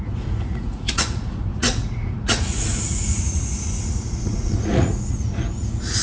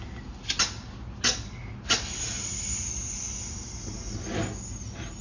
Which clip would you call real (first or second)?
second